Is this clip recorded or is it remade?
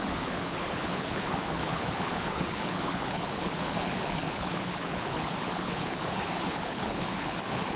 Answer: remade